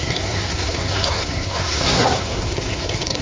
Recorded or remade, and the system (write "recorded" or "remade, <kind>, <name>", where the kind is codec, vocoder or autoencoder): remade, codec, SNAC